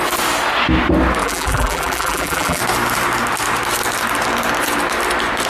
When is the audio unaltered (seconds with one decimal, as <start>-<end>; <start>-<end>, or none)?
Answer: 0.0-1.2; 2.6-5.5